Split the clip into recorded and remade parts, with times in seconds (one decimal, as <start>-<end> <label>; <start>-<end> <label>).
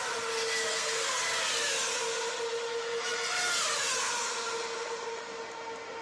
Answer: 0.0-0.7 recorded; 0.7-1.2 remade; 1.2-6.0 recorded